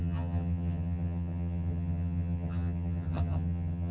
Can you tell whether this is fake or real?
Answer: fake